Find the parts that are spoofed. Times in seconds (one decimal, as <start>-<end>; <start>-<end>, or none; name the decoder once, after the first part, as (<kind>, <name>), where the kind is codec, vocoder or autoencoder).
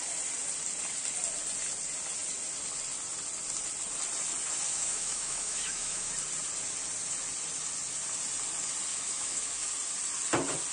4.7-6.1 (autoencoder, DAC-VAE); 8.9-9.7